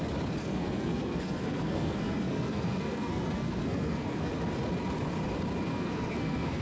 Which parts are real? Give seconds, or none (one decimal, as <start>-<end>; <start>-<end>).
0.0-0.4; 4.3-5.7